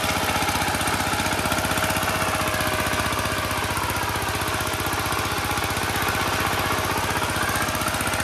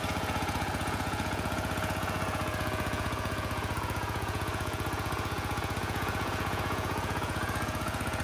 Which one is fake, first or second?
second